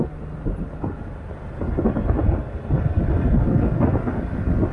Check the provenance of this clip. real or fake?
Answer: real